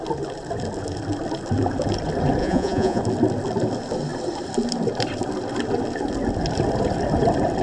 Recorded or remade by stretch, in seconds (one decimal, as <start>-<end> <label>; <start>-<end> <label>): 0.0-2.4 recorded; 2.4-3.0 remade; 3.0-7.6 recorded